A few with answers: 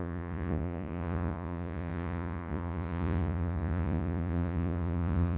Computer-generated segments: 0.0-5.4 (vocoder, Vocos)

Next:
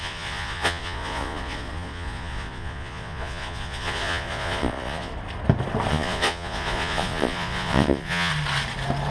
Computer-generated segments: 0.0-5.1 (vocoder, Vocos); 5.9-8.3

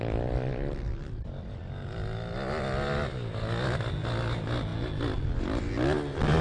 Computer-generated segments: none

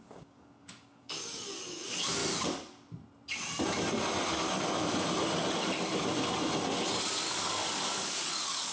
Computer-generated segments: 0.0-2.2 (codec, DAC); 7.0-8.7